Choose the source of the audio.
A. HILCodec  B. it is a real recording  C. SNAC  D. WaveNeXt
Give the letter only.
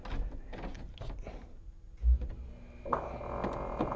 B